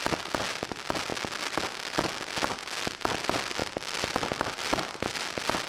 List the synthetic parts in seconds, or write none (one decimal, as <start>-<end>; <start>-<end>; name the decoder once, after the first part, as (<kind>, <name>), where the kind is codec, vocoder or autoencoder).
none